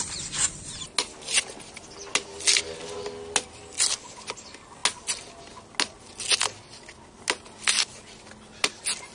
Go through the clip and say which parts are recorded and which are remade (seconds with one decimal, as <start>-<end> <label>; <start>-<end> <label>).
0.0-9.1 recorded